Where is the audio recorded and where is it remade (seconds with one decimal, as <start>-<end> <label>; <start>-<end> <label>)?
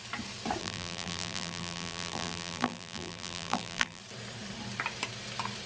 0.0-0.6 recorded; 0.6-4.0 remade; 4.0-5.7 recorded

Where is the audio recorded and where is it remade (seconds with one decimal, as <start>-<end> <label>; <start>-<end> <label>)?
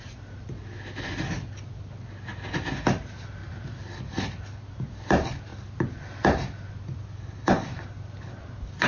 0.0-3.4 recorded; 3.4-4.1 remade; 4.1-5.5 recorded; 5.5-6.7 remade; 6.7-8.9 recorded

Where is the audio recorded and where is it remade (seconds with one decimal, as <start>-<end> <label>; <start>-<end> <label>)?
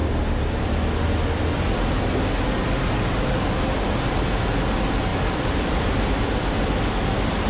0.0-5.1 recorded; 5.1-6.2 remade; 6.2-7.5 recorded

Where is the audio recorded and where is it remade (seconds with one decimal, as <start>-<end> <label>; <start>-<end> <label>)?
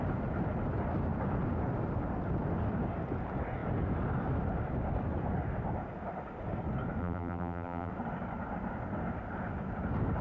0.0-7.0 recorded; 7.0-7.9 remade; 7.9-10.2 recorded